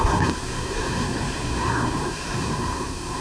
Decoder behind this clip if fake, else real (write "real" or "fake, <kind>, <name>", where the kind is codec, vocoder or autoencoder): fake, codec, SNAC